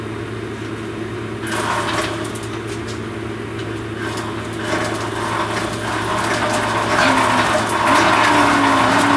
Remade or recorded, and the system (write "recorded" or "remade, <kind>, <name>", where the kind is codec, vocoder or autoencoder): recorded